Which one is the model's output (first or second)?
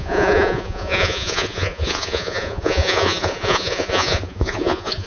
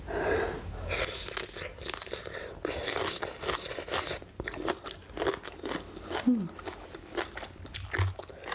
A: first